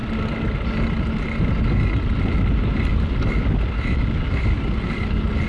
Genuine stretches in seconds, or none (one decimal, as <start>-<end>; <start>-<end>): 0.0-5.5